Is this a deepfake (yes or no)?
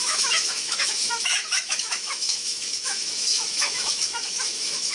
yes